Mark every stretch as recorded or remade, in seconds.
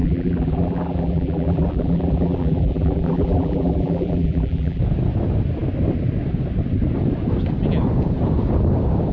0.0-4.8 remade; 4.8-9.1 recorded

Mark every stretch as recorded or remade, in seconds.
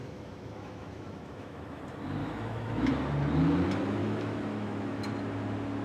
0.0-1.8 remade; 1.8-2.2 recorded; 2.2-2.9 remade; 2.9-4.0 recorded; 4.0-5.1 remade; 5.1-5.8 recorded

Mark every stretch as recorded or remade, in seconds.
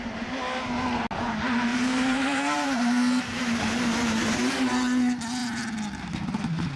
0.0-1.7 recorded; 1.7-4.5 remade; 4.5-6.8 recorded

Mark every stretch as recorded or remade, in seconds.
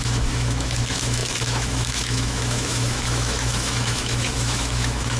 0.0-5.2 remade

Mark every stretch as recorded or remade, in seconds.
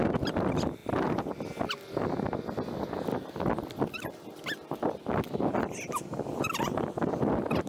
0.0-7.7 recorded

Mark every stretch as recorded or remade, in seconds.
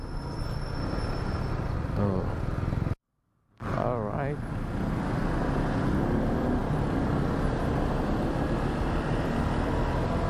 0.0-10.3 recorded